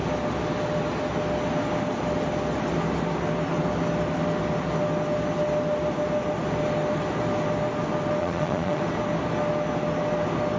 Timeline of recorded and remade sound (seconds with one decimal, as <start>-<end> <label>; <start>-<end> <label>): 0.0-8.2 recorded; 8.2-8.8 remade; 8.8-10.6 recorded